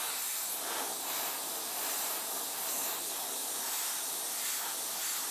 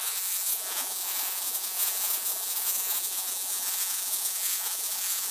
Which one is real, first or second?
first